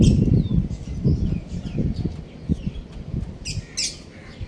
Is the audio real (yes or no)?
yes